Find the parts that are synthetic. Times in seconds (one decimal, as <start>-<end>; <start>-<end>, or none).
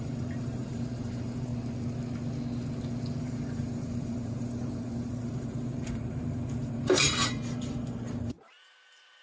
0.0-1.5; 3.2-9.2